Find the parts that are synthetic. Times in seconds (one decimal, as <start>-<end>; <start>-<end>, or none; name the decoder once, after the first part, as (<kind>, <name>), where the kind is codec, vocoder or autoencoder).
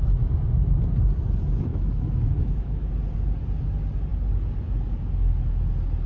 1.7-2.9 (autoencoder, DAC-VAE)